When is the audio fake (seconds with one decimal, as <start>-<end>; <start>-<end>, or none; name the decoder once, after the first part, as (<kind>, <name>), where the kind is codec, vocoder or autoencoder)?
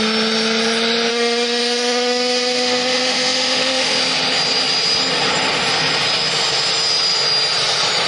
1.1-4.0 (autoencoder, DAC-VAE)